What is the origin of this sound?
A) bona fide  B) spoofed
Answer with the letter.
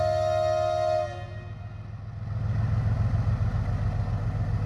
A